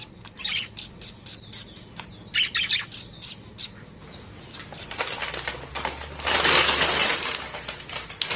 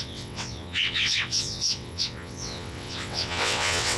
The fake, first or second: second